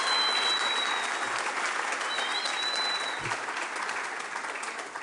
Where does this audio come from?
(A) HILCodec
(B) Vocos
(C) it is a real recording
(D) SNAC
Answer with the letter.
C